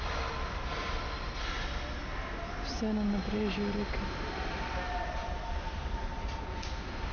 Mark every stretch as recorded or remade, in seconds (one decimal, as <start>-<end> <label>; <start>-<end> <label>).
0.0-5.2 recorded; 5.2-6.4 remade; 6.4-7.1 recorded